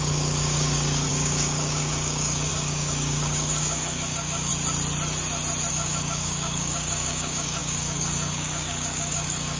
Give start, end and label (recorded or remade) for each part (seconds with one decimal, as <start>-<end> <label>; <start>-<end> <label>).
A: 0.0-4.5 remade; 4.5-5.7 recorded; 5.7-9.6 remade